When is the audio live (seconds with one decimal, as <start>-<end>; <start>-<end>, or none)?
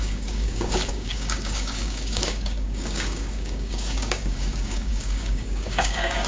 none